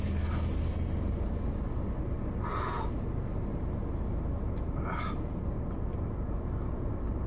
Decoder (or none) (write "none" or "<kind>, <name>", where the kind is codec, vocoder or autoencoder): none